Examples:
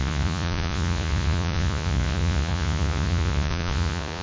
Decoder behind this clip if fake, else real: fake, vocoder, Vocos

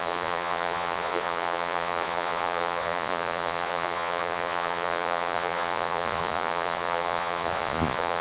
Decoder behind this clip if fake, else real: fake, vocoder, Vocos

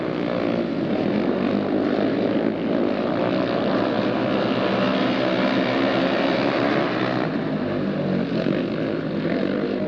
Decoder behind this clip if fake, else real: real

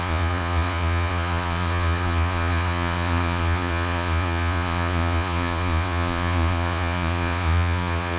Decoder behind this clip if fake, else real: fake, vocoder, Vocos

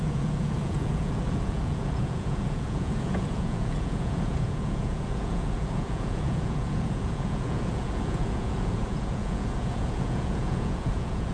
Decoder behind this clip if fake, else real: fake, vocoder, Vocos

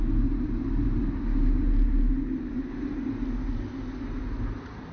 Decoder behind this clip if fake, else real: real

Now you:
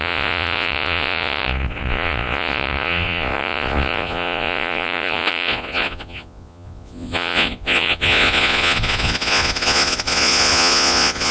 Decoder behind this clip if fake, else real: fake, vocoder, Vocos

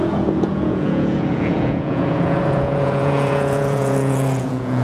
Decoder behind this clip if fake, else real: fake, vocoder, Vocos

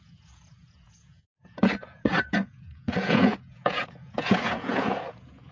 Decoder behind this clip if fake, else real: fake, vocoder, Vocos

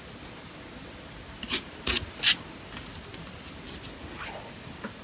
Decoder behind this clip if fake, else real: real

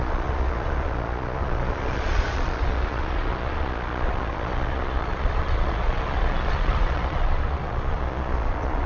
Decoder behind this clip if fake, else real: fake, vocoder, Vocos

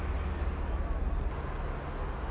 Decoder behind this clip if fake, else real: real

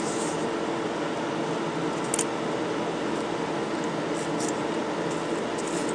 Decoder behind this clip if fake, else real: real